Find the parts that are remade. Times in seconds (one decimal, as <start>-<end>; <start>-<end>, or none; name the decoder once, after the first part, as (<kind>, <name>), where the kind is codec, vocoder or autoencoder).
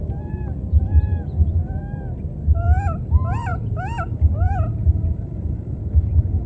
0.0-1.8 (vocoder, BigVGAN v2); 2.6-3.5; 4.4-6.5